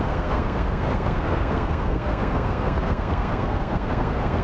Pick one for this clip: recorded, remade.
remade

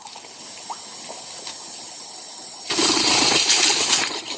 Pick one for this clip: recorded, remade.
recorded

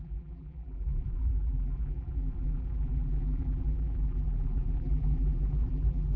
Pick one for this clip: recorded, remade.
remade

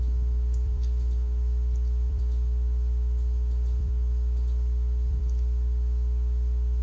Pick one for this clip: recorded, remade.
remade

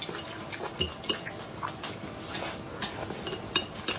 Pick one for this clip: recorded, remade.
recorded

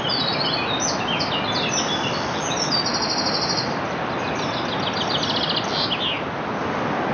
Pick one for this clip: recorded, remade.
recorded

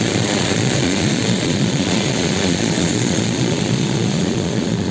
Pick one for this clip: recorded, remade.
remade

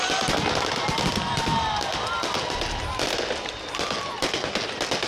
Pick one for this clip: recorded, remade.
recorded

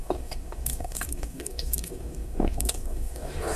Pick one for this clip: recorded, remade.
remade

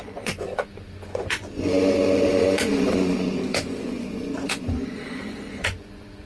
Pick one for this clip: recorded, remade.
remade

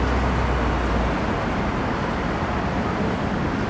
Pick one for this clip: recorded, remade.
recorded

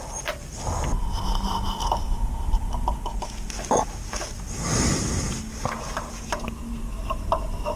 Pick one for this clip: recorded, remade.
recorded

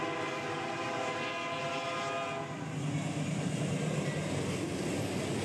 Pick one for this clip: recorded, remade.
recorded